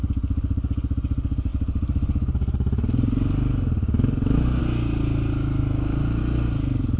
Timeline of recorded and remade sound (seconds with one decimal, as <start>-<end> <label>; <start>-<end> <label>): 0.0-7.0 recorded